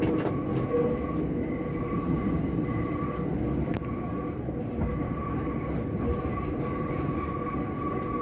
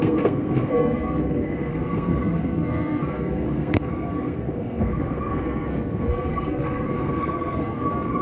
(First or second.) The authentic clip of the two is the first